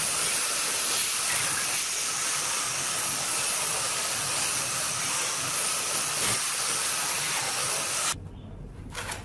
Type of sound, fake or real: real